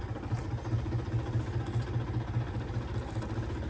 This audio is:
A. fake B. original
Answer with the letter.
B